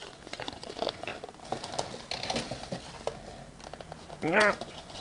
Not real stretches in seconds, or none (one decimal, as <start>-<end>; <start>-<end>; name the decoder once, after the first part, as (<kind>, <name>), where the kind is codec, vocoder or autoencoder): 0.0-1.1 (vocoder, Vocos); 4.1-5.0